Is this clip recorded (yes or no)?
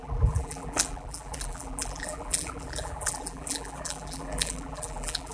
no